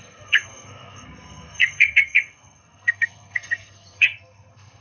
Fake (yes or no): yes